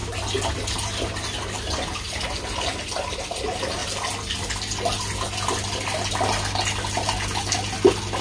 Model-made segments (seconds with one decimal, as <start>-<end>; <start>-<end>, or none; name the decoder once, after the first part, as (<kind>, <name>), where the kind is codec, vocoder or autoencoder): none

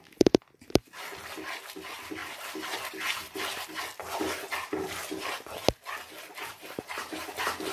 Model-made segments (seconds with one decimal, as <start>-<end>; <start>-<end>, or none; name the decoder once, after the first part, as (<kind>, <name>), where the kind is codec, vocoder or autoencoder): none

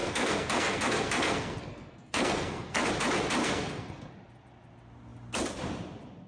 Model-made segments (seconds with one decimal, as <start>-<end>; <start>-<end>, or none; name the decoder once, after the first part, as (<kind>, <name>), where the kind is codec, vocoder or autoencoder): 0.0-2.9 (codec, SNAC); 3.4-4.1

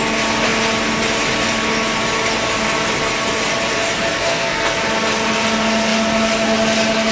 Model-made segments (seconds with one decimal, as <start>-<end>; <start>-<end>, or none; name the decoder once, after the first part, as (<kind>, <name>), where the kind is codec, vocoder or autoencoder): 4.1-4.8 (codec, SNAC)

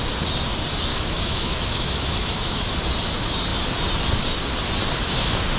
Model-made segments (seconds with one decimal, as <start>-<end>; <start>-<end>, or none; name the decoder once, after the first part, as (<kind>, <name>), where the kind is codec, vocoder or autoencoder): 0.9-2.7 (autoencoder, DAC-VAE)